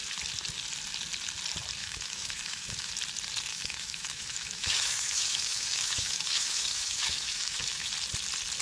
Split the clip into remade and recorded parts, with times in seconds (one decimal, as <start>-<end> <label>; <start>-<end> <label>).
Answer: 0.0-1.8 recorded; 1.8-2.9 remade; 2.9-3.5 recorded; 3.5-7.9 remade; 7.9-8.6 recorded